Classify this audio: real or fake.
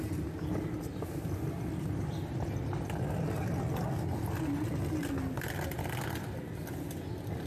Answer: real